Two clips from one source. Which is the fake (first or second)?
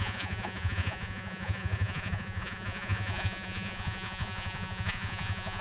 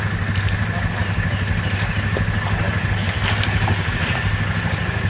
first